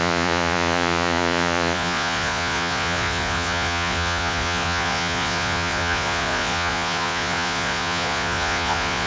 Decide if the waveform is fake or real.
fake